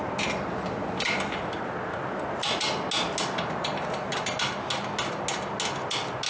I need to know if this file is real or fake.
real